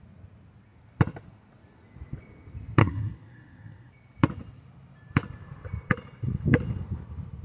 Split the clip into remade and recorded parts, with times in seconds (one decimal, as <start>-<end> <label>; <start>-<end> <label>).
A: 0.0-2.8 recorded; 2.8-3.9 remade; 3.9-7.4 recorded